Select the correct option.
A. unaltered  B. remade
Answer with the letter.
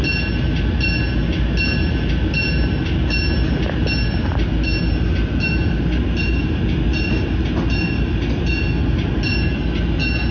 A